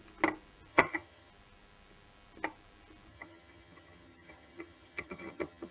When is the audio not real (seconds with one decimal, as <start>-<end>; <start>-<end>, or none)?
0.7-1.3; 3.1-5.7

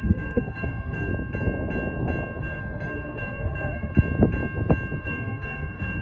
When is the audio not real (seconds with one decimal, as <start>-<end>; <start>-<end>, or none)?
0.0-1.1; 2.4-3.9; 5.0-6.0

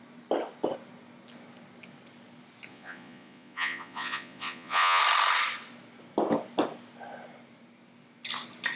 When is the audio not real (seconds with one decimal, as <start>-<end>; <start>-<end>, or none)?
2.7-5.0